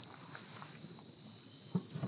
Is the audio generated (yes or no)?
no